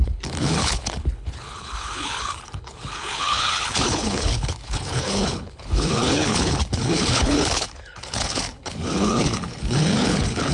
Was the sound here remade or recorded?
remade